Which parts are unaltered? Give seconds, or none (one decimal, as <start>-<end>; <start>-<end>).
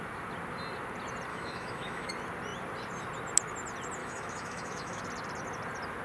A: 0.0-1.3; 2.1-4.0; 5.0-6.0